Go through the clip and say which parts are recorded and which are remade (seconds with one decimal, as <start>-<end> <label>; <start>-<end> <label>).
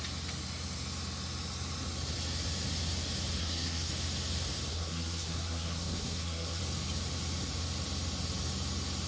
0.0-3.4 recorded; 3.4-3.9 remade; 3.9-4.7 recorded; 4.7-6.6 remade; 6.6-9.1 recorded